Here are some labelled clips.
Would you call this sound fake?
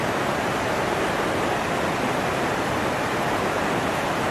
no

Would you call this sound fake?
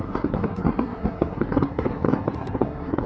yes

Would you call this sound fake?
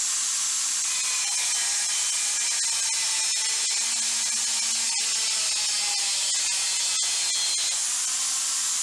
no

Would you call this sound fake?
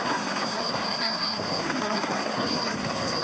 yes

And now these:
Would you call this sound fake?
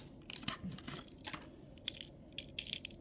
no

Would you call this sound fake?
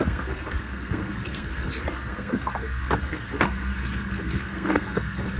yes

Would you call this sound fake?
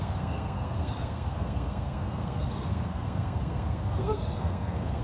yes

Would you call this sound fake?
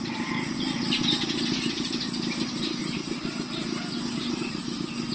no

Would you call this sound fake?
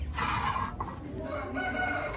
no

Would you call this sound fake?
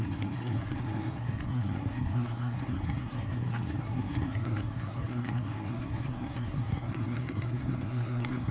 yes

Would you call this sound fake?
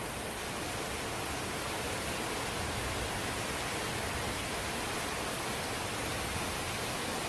no